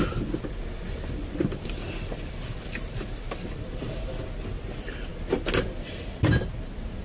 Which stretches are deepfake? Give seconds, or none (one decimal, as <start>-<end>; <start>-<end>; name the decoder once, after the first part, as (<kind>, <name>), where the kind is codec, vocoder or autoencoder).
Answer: none